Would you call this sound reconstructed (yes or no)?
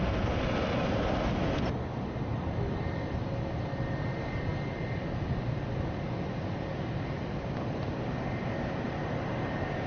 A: no